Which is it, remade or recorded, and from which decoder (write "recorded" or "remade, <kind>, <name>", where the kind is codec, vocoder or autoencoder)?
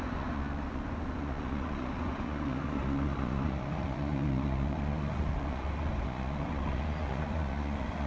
remade, vocoder, Vocos